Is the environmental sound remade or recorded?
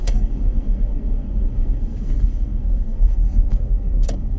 remade